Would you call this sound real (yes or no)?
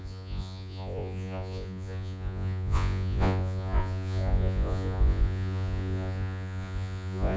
no